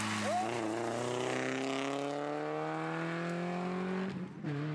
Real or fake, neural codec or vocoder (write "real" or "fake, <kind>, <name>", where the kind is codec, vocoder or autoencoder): real